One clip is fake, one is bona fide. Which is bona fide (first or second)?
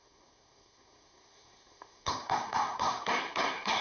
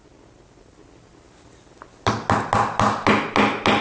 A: second